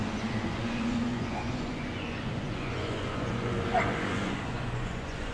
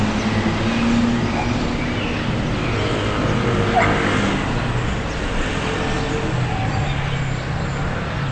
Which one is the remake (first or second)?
first